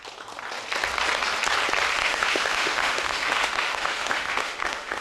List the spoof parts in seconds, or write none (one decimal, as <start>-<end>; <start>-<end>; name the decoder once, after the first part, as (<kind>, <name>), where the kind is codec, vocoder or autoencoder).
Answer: 2.0-5.0 (autoencoder, DAC-VAE)